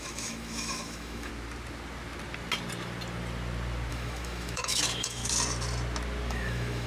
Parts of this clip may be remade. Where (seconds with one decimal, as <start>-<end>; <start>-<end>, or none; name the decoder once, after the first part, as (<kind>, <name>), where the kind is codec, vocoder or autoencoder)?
0.0-1.3 (autoencoder, DAC-VAE); 3.9-5.2; 6.3-6.9